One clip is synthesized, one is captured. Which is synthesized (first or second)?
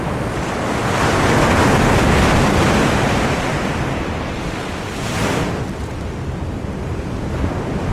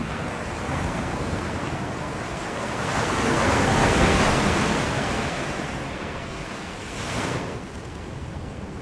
second